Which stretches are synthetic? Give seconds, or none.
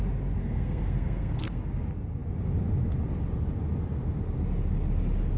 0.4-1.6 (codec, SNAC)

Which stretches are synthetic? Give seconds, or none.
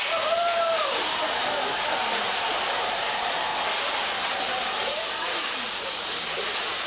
0.0-3.5 (vocoder, BigVGAN v2); 4.4-6.9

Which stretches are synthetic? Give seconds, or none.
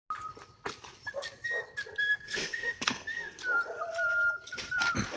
2.1-3.4 (codec, SNAC)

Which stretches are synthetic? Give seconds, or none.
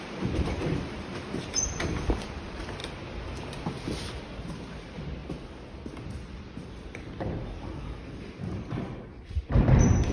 0.0-2.8 (vocoder, BigVGAN v2); 4.5-5.2; 6.6-10.1